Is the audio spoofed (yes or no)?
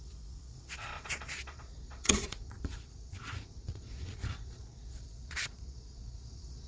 yes